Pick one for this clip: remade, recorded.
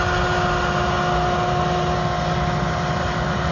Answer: recorded